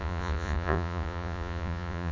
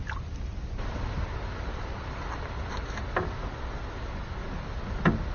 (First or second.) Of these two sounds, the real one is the second